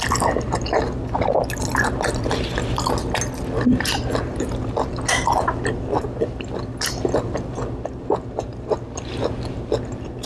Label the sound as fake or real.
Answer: real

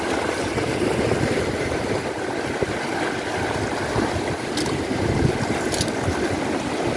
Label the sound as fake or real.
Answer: real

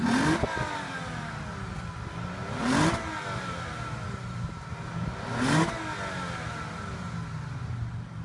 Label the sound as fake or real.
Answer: real